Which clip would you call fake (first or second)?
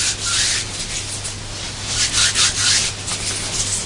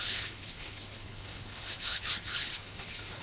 second